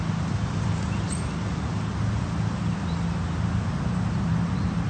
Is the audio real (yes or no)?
yes